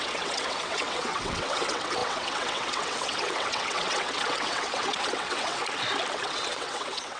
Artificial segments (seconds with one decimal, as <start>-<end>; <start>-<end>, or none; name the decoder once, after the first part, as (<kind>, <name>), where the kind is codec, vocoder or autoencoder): 0.0-5.6 (vocoder, WaveNeXt); 6.1-7.2